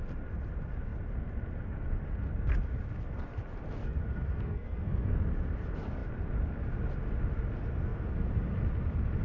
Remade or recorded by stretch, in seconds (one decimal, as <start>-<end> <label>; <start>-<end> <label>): 0.0-3.8 recorded; 3.8-5.2 remade; 5.2-9.2 recorded